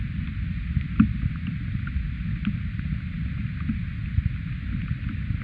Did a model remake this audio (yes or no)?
no